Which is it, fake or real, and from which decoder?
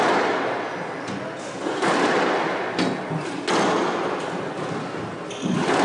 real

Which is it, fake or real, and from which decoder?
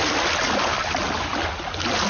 real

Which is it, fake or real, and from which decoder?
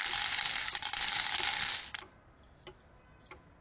real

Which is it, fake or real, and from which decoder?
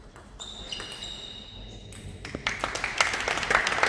real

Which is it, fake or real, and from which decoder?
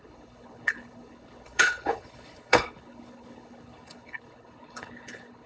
fake, codec, HILCodec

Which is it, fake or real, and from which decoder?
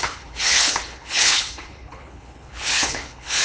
fake, codec, HILCodec